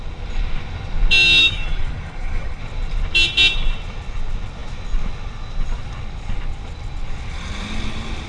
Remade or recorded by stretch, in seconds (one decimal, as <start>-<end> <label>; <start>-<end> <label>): 0.0-1.4 recorded; 1.4-2.6 remade; 2.6-8.3 recorded